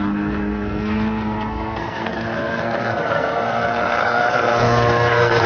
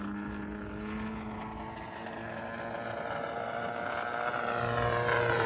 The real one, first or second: second